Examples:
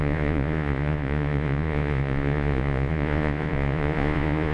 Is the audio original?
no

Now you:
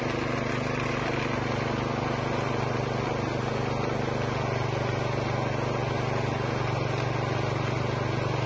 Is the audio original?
yes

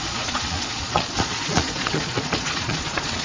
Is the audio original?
no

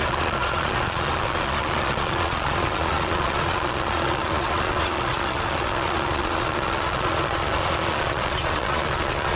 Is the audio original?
no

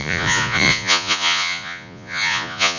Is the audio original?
no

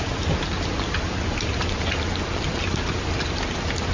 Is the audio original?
yes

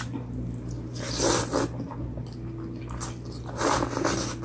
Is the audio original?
yes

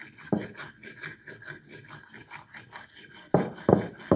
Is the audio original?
yes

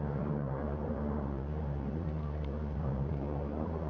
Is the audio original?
no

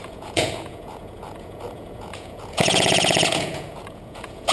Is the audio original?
no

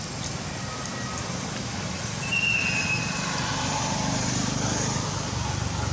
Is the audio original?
yes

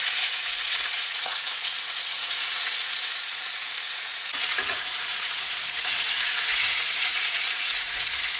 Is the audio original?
no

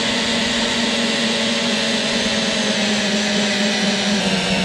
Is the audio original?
no